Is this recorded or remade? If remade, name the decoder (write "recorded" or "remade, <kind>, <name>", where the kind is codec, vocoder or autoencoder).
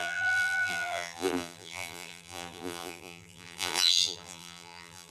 remade, vocoder, BigVGAN v2